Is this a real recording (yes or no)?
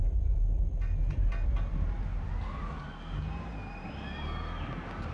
yes